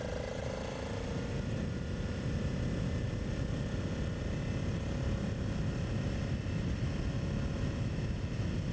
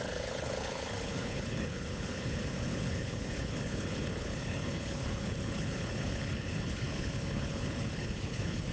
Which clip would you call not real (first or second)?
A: second